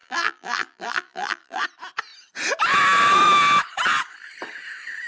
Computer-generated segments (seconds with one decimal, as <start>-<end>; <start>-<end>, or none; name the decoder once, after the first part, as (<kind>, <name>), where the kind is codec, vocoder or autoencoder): 0.0-1.6 (vocoder, BigVGAN v2)

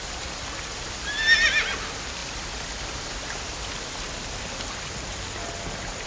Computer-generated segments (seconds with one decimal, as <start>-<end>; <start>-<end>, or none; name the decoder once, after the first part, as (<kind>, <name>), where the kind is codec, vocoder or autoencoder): none

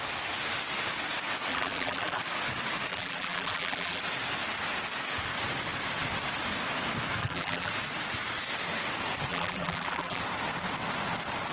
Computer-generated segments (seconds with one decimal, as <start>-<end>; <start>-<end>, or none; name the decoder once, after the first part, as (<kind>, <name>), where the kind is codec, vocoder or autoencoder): 1.5-2.2 (vocoder, BigVGAN v2); 2.9-4.0; 7.2-7.7; 9.3-10.2

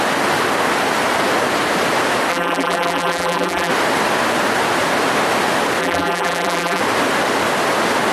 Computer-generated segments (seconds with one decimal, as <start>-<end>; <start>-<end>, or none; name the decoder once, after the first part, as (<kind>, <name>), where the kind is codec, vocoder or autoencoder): 2.3-3.7 (vocoder, BigVGAN v2); 5.8-6.8

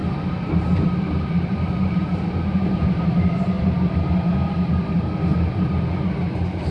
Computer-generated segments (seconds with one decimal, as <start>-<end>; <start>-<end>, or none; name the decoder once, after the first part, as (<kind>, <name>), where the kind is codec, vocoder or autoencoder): 0.0-3.3 (vocoder, BigVGAN v2); 5.3-6.7

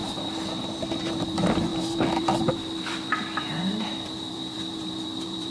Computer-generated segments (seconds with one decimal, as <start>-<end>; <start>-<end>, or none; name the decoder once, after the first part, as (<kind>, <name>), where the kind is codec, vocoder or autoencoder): 0.0-5.5 (vocoder, BigVGAN v2)